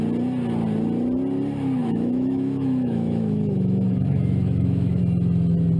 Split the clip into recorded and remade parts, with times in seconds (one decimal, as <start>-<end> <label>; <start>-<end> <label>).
0.0-1.8 recorded; 1.8-5.0 remade; 5.0-5.8 recorded